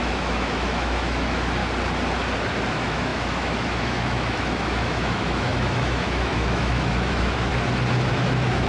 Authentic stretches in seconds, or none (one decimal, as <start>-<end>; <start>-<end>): 1.6-2.7; 7.5-8.1